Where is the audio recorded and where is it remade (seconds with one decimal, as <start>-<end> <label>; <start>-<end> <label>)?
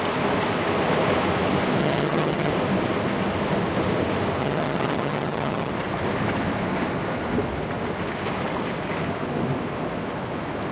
0.0-1.8 recorded; 1.8-2.5 remade; 2.5-4.4 recorded; 4.4-5.7 remade; 5.7-10.7 recorded